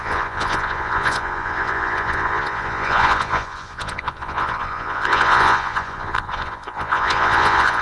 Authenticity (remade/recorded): remade